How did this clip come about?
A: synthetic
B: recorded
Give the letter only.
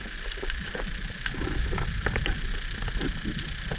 B